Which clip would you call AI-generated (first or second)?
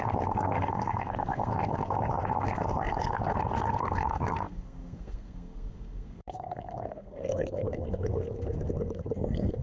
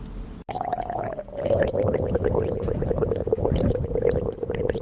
first